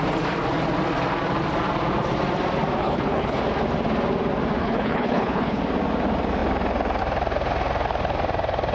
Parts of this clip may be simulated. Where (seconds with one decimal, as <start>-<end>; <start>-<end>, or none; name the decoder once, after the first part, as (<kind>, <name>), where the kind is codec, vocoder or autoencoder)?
2.8-3.4 (codec, HILCodec); 4.6-5.6